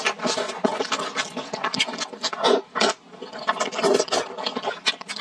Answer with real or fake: real